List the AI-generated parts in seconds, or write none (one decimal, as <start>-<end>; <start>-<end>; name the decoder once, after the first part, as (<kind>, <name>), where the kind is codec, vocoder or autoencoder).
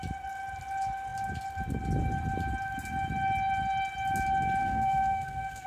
4.6-5.7 (codec, SNAC)